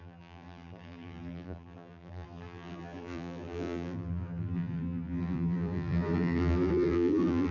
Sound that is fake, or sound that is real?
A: fake